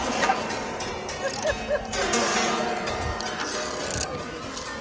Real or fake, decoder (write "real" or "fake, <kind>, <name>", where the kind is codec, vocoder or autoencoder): real